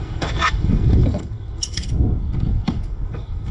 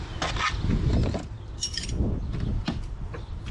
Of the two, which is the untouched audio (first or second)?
second